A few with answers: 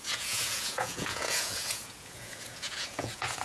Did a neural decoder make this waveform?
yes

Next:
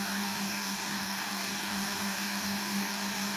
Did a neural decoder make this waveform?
yes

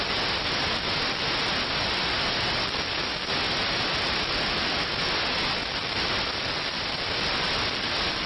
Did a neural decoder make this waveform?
no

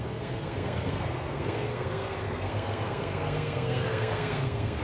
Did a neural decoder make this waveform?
yes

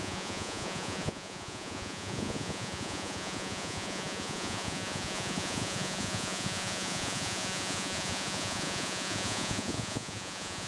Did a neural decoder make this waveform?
yes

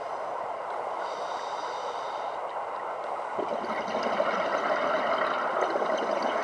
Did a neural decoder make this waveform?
yes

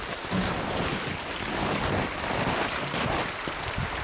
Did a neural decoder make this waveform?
no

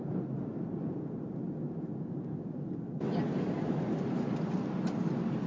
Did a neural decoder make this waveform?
no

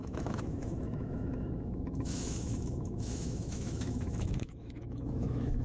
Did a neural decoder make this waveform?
yes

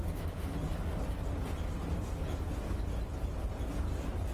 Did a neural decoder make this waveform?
no